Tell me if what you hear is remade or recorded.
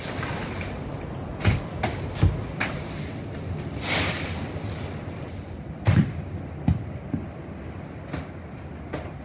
recorded